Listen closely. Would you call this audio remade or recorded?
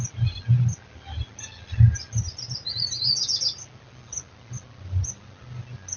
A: recorded